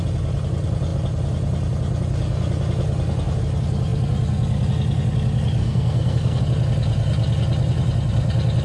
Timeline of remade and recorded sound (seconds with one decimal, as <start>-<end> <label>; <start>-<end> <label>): 0.0-5.6 recorded; 5.6-6.4 remade; 6.4-8.6 recorded